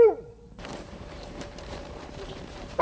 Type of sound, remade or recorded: remade